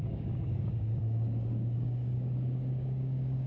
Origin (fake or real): fake